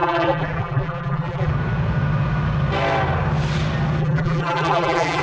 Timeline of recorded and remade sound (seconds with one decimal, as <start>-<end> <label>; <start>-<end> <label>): 0.0-1.5 remade; 1.5-4.0 recorded; 4.0-5.2 remade